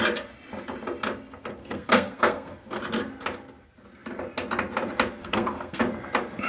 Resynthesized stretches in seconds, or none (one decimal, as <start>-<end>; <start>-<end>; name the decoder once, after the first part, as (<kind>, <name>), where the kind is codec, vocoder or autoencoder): 1.6-2.8 (codec, SNAC); 5.2-5.8

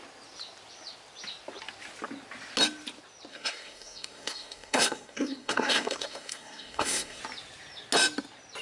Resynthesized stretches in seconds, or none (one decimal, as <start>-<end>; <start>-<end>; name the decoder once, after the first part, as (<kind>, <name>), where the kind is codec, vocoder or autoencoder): 3.3-7.2 (codec, SNAC)

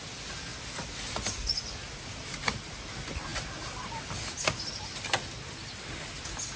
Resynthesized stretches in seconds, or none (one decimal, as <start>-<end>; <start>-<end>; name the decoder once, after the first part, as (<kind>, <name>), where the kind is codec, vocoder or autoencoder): none

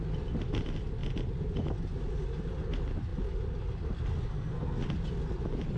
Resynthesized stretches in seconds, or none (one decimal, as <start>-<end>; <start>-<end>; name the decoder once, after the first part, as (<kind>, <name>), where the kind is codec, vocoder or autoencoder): 4.3-4.8 (codec, SNAC)

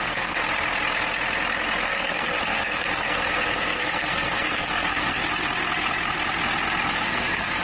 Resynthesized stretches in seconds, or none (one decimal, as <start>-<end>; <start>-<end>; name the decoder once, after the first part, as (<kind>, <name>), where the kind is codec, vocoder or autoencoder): 0.0-0.4 (codec, SNAC); 1.8-5.2; 6.9-7.6

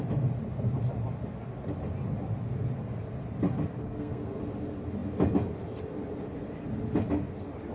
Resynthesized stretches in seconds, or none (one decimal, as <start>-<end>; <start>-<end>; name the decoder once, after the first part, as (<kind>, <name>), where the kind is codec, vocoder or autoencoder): 3.7-4.4 (codec, SNAC)